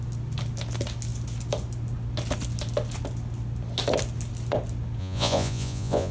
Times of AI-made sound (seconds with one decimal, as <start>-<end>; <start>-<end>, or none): 5.0-6.1